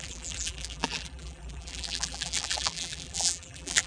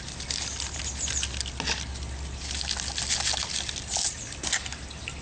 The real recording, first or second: second